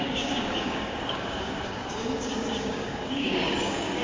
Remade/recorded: remade